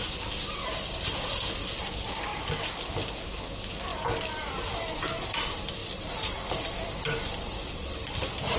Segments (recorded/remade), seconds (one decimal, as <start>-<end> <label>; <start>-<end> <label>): 0.0-0.6 recorded; 0.6-1.6 remade; 1.6-2.3 recorded; 2.3-2.9 remade; 2.9-3.9 recorded; 3.9-4.9 remade; 4.9-8.6 recorded